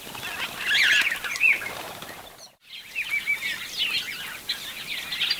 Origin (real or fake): real